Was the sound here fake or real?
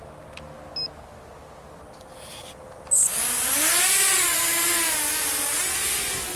real